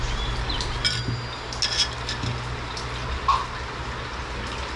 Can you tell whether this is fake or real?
real